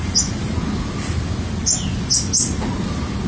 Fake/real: real